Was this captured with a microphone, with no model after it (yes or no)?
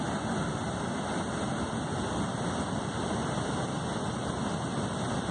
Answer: yes